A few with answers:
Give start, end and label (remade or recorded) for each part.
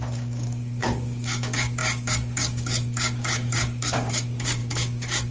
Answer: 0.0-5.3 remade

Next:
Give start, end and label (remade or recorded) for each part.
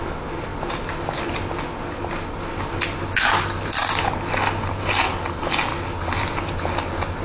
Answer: 0.0-7.2 recorded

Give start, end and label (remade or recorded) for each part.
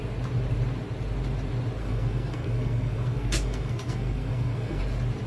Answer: 0.0-1.8 recorded; 1.8-4.8 remade; 4.8-5.3 recorded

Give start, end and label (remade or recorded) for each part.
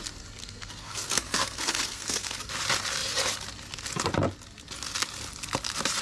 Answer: 0.0-0.4 recorded; 0.4-2.5 remade; 2.5-6.0 recorded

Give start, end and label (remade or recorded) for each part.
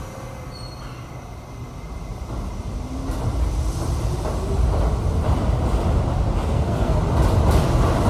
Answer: 0.0-6.4 recorded; 6.4-7.0 remade; 7.0-8.1 recorded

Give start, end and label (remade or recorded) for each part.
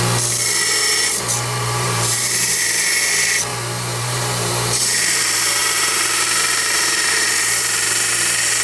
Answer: 0.0-0.8 recorded; 0.8-2.6 remade; 2.6-3.5 recorded; 3.5-5.0 remade; 5.0-5.6 recorded; 5.6-7.0 remade; 7.0-8.6 recorded